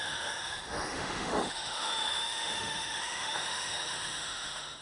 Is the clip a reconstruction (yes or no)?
yes